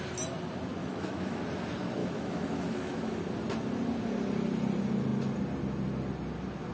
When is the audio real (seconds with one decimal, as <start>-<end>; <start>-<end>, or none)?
0.0-0.8; 1.4-2.0; 3.2-6.7